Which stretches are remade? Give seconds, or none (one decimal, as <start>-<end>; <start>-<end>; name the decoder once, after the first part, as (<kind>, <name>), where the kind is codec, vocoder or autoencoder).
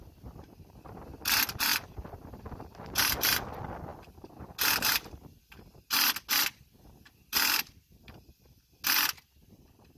1.7-2.4 (vocoder, BigVGAN v2)